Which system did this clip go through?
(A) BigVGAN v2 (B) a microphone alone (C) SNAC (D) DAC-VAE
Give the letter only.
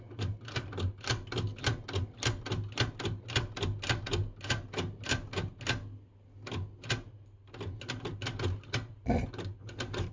B